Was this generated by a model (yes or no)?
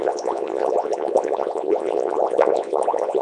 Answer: yes